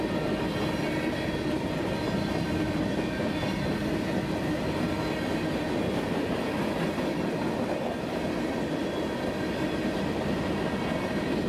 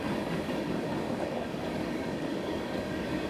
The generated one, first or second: second